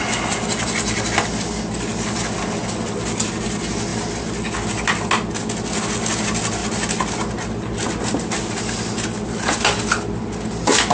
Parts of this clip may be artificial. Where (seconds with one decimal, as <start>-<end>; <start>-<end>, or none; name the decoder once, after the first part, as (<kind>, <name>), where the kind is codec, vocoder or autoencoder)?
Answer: none